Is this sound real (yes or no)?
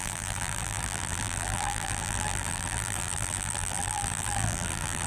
no